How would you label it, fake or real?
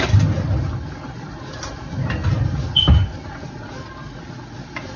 real